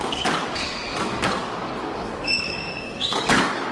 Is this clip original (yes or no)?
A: no